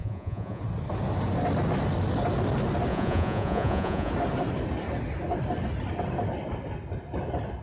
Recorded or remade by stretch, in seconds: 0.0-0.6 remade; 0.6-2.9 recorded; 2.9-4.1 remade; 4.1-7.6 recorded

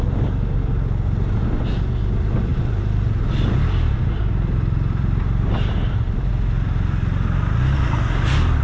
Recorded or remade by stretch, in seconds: 0.0-2.5 recorded; 2.5-6.3 remade; 6.3-8.6 recorded

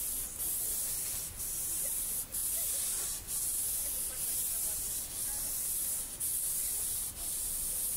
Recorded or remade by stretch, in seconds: 0.0-8.0 recorded

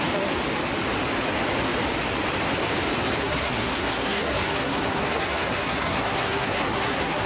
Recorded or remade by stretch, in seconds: 0.0-3.2 recorded; 3.2-7.3 remade

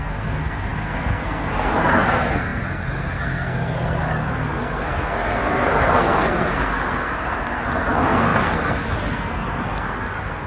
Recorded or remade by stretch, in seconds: 0.0-10.5 remade

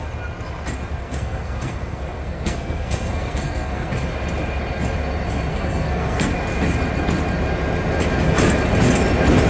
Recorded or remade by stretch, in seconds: 0.0-1.0 recorded; 1.0-3.9 remade; 3.9-5.5 recorded; 5.5-6.3 remade; 6.3-9.5 recorded